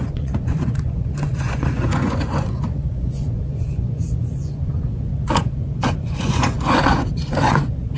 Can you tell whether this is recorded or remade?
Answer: remade